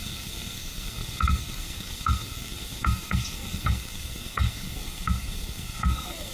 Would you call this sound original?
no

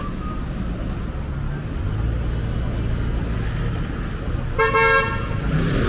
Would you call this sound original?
yes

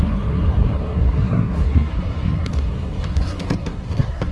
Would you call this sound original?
no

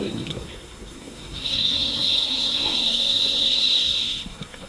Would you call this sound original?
no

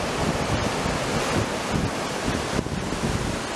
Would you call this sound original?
yes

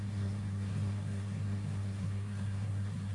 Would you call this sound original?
no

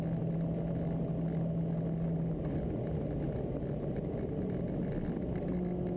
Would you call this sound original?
yes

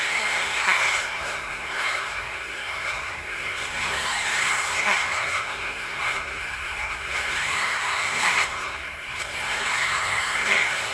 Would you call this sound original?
no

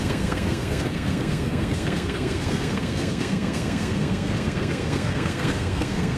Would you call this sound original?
no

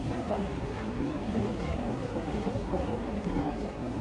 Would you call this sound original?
no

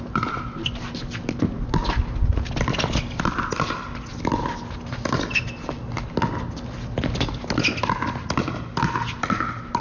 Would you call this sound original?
yes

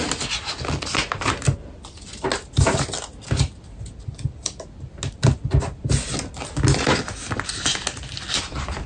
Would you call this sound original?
yes